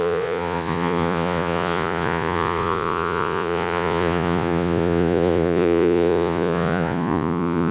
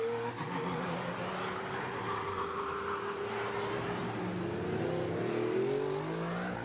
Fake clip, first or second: first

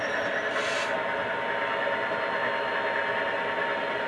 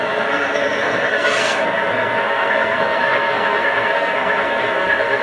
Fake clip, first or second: second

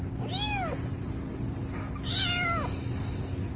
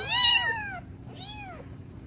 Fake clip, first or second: second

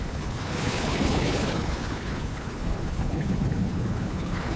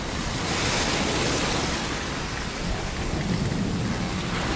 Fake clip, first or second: first